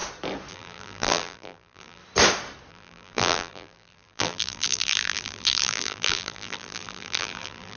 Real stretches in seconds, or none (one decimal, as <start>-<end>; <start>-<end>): 0.0-0.5; 2.0-2.7